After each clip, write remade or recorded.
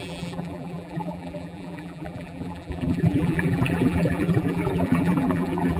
remade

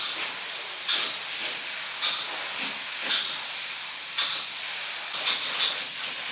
recorded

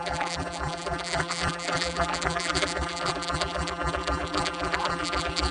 remade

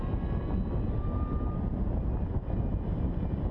recorded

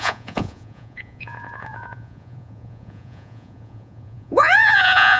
remade